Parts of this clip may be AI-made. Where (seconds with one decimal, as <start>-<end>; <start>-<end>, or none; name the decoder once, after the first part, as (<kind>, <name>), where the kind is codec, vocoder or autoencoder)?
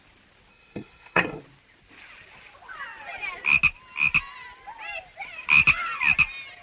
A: 0.5-1.4 (codec, SNAC)